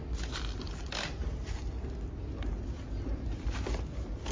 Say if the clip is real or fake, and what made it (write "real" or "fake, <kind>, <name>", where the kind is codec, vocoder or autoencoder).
real